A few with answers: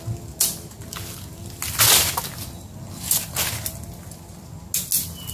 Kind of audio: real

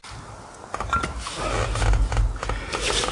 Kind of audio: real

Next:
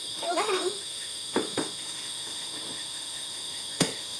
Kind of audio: fake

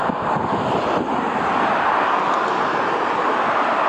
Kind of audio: real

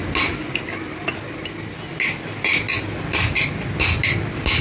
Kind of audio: real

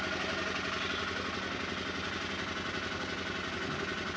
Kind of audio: real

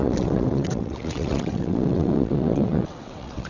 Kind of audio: fake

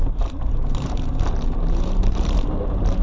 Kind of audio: fake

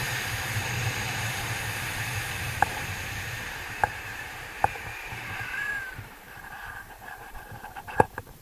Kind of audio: fake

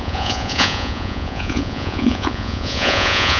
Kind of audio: fake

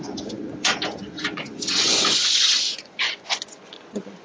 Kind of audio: fake